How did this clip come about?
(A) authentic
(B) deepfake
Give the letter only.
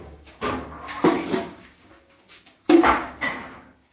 B